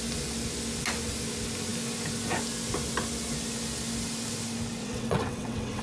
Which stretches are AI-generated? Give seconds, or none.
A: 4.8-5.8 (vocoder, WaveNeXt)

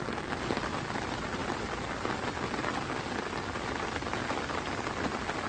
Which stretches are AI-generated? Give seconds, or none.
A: none

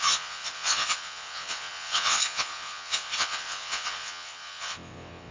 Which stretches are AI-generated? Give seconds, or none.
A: 0.0-5.3 (vocoder, WaveNeXt)

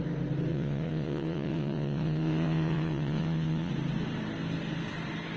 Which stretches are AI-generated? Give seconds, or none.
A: 0.5-3.7 (vocoder, WaveNeXt)

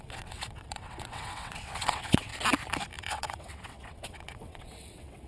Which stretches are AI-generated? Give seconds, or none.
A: 0.0-2.3 (vocoder, WaveNeXt); 3.0-5.3

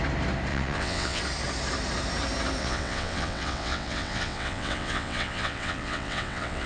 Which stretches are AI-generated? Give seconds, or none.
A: 0.5-1.2 (vocoder, WaveNeXt); 2.6-6.7

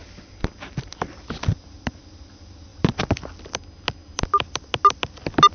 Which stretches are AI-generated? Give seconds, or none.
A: none

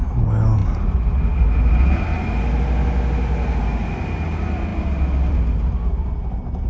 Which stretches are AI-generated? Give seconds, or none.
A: none